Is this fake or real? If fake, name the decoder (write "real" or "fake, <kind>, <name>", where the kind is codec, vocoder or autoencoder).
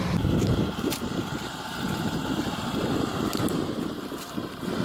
fake, vocoder, BigVGAN v2